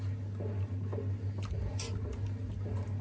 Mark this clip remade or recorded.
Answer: recorded